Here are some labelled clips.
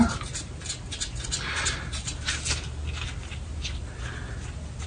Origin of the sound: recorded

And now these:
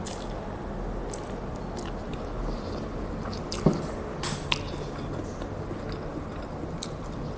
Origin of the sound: recorded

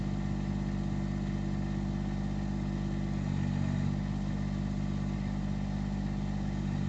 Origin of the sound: recorded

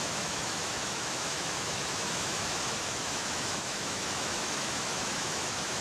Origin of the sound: remade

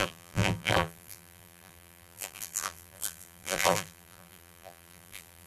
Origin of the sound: remade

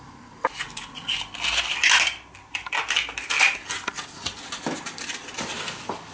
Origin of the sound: recorded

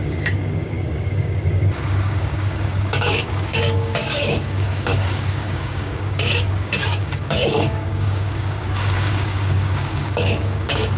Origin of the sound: remade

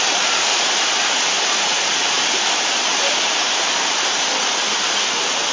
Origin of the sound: remade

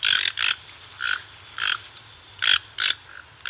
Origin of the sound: recorded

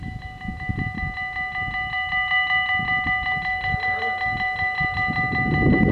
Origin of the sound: recorded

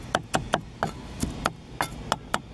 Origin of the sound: recorded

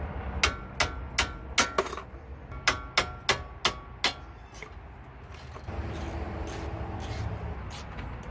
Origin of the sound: recorded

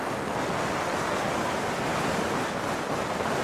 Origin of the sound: recorded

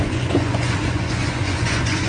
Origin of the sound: remade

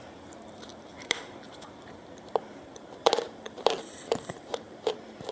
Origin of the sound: remade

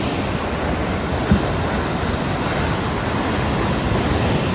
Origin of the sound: recorded